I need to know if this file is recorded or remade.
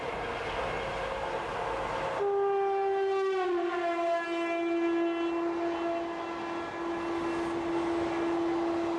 recorded